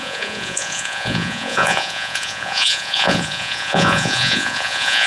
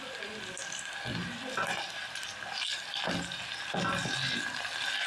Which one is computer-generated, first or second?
first